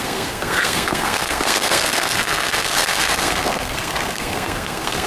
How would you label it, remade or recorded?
remade